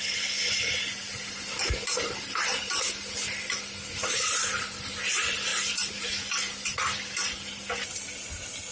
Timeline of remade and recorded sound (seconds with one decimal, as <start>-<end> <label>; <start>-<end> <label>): 0.0-5.5 recorded; 5.5-6.1 remade; 6.1-8.7 recorded